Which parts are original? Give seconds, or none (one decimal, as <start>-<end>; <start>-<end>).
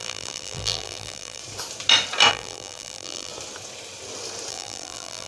1.4-2.3; 3.3-4.5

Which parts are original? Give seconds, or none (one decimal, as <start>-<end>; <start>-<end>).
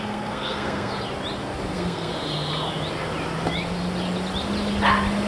0.9-1.7; 2.1-5.3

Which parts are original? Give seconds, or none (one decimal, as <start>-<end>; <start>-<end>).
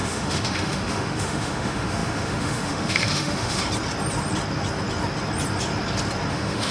3.6-6.3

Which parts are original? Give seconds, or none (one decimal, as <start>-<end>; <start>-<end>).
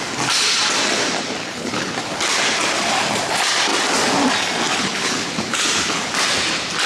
0.0-1.4; 1.9-4.7; 6.1-6.9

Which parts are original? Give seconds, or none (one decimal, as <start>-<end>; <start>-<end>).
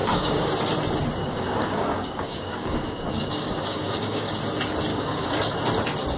0.5-1.2; 4.4-4.9; 5.6-6.2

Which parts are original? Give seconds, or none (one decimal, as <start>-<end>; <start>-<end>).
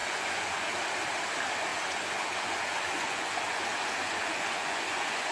0.7-1.7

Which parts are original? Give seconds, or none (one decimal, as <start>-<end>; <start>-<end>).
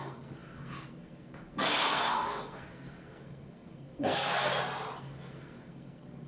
4.5-5.0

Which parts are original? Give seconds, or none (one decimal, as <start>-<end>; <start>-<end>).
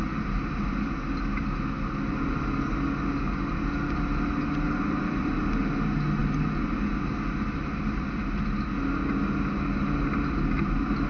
0.0-11.1